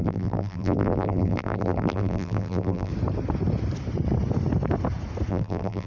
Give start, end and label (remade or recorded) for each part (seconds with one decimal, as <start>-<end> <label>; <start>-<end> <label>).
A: 0.0-2.9 remade; 2.9-5.3 recorded; 5.3-5.9 remade